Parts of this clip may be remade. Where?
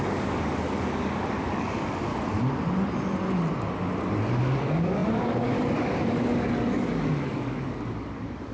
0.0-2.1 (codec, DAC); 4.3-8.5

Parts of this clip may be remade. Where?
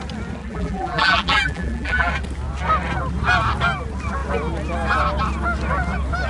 0.4-2.1 (vocoder, BigVGAN v2)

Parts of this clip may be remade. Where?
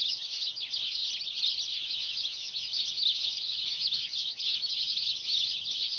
0.0-1.0 (autoencoder, DAC-VAE); 1.6-6.0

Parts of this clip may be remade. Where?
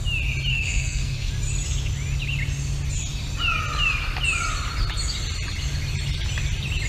0.5-1.3 (codec, SNAC)